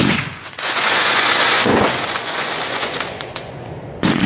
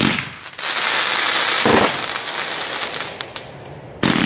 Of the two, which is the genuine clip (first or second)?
second